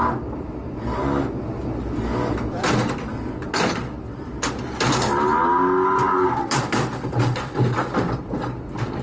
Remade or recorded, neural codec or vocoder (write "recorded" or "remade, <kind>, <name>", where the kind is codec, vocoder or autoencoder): recorded